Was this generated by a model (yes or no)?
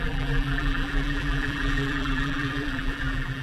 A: yes